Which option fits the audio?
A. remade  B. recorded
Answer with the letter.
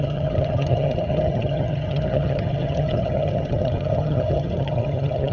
A